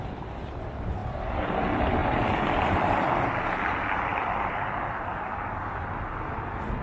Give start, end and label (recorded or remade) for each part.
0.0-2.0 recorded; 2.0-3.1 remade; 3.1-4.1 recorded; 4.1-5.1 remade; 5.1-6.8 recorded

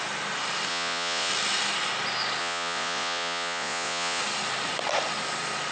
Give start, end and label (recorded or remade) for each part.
0.0-0.7 recorded; 0.7-1.3 remade; 1.3-2.4 recorded; 2.4-4.2 remade; 4.2-5.7 recorded